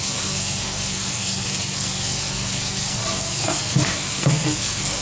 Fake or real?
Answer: fake